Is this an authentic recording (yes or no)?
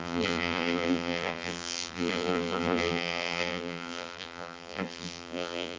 no